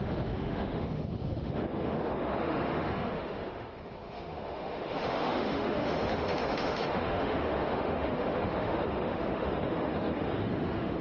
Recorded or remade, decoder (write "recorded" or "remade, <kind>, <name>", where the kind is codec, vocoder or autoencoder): remade, autoencoder, DAC-VAE